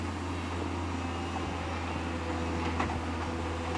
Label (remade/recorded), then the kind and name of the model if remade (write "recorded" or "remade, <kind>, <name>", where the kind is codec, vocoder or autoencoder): recorded